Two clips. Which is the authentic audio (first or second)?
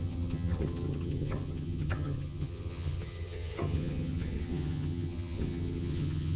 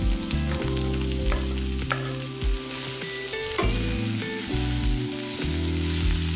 second